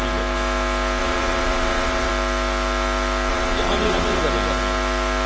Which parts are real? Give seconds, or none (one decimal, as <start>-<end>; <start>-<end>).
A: 0.0-1.0; 2.1-3.3; 4.2-5.3